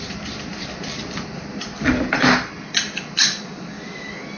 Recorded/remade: recorded